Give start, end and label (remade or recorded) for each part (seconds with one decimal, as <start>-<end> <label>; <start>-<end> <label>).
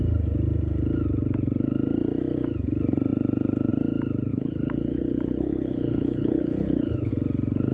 0.0-4.3 recorded; 4.3-7.1 remade; 7.1-7.7 recorded